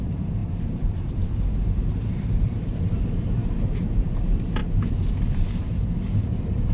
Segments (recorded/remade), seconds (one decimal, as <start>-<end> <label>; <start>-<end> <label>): 0.0-4.6 remade; 4.6-5.1 recorded; 5.1-6.7 remade